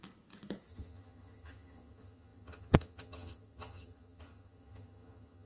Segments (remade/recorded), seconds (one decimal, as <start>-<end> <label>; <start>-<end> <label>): 0.0-0.7 recorded; 0.7-5.5 remade